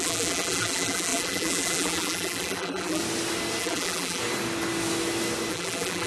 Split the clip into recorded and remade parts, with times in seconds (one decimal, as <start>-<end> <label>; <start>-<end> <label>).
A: 0.0-3.0 remade; 3.0-3.6 recorded; 3.6-4.2 remade; 4.2-5.5 recorded; 5.5-6.1 remade